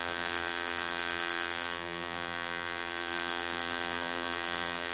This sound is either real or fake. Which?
fake